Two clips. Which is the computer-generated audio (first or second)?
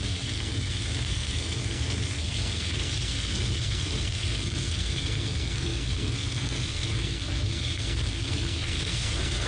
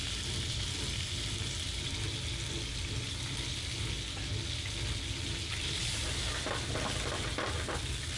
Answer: first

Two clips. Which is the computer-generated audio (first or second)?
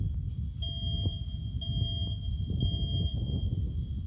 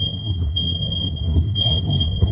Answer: second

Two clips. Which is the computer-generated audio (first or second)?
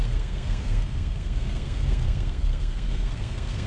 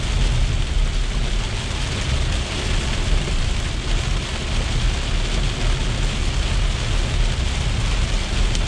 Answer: first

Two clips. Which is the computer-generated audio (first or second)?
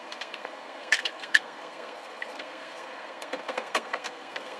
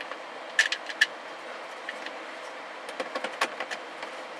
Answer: first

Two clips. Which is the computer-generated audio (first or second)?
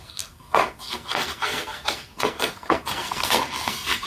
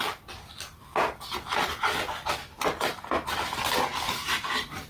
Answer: first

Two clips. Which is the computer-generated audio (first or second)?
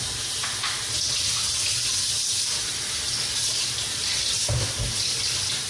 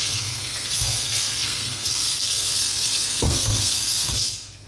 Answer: second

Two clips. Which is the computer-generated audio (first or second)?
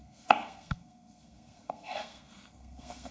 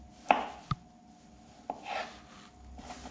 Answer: first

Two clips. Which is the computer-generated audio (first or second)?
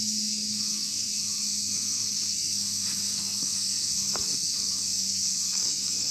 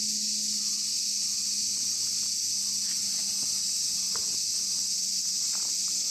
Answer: first